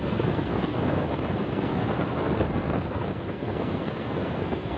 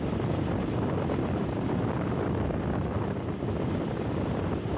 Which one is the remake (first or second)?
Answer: first